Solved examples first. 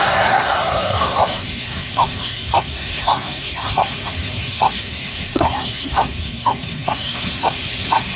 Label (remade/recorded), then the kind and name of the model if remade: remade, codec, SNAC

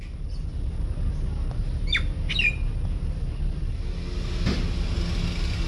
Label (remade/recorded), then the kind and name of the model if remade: recorded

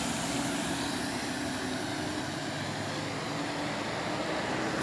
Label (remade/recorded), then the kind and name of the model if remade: recorded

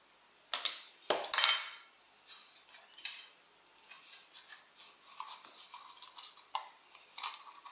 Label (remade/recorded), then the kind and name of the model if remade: recorded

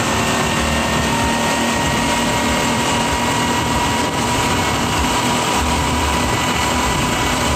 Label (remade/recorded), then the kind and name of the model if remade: remade, vocoder, BigVGAN v2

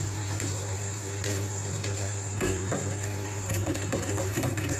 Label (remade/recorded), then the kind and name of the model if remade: remade, codec, SNAC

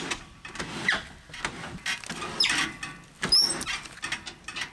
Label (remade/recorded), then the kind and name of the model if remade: recorded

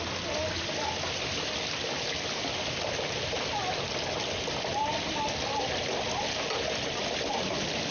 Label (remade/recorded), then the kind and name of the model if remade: recorded